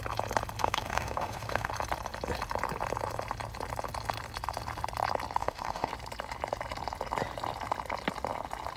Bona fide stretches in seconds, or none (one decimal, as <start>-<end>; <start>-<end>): 0.0-0.6; 1.7-5.4; 5.9-8.8